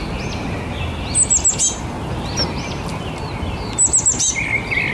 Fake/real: real